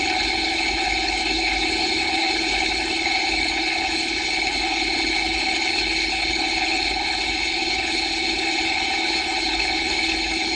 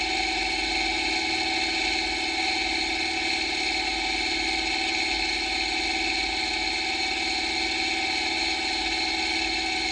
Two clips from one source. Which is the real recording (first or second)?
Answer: second